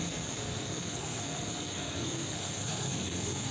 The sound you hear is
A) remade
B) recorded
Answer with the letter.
A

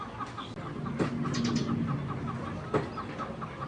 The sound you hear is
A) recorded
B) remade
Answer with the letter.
A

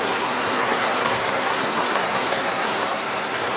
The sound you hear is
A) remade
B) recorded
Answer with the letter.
A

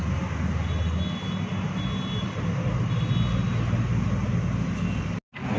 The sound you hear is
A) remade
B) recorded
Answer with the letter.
B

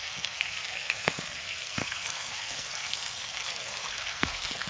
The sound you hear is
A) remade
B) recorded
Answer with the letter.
A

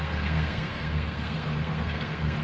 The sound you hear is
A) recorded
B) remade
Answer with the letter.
B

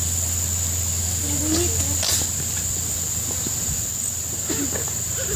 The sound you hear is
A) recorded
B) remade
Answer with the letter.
A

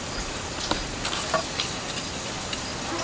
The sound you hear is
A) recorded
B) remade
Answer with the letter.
A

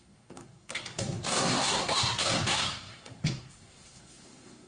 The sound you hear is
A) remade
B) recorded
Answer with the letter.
A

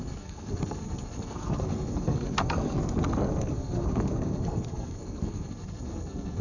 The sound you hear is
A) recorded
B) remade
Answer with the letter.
B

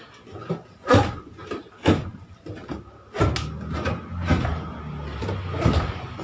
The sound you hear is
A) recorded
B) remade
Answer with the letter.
A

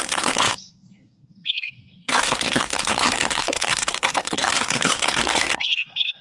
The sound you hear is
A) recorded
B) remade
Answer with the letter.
B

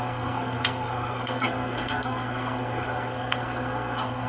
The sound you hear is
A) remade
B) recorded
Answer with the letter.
A